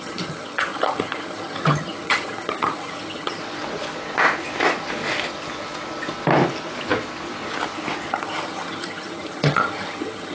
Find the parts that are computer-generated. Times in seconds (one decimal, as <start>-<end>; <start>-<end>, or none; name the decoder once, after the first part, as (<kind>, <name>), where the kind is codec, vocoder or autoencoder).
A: 0.0-3.4 (vocoder, HiFi-GAN); 8.1-10.3